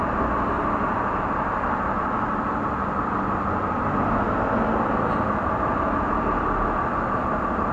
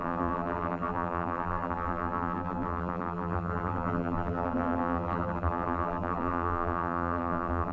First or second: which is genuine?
first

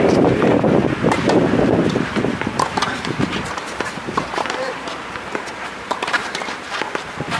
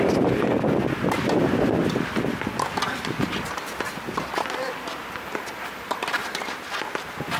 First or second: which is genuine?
second